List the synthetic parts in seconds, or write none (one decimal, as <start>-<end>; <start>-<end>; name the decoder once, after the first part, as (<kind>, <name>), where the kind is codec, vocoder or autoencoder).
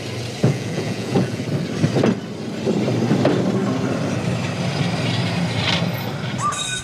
0.4-1.4 (vocoder, Vocos)